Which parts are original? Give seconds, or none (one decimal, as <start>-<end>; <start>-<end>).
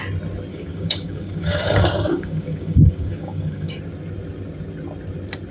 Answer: 0.0-0.5; 3.8-5.5